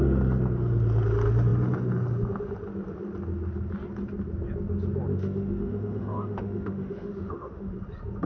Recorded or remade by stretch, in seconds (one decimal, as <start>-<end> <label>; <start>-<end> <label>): 0.0-5.1 recorded; 5.1-7.7 remade; 7.7-8.3 recorded